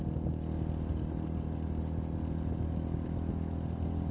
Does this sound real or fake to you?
real